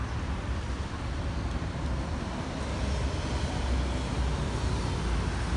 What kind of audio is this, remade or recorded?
recorded